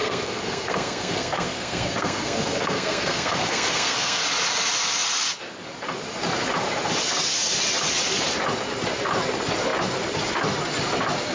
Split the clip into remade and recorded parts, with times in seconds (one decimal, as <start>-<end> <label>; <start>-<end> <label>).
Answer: 0.0-4.2 remade; 4.2-11.3 recorded